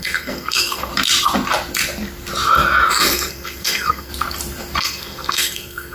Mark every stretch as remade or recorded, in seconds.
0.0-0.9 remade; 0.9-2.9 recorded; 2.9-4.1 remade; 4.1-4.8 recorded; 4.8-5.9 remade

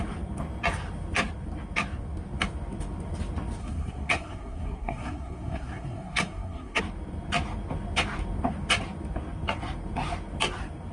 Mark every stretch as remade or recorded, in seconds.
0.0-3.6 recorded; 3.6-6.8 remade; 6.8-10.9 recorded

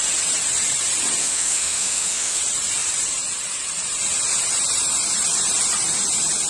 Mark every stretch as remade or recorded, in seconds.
0.0-1.2 recorded; 1.2-2.4 remade; 2.4-6.5 recorded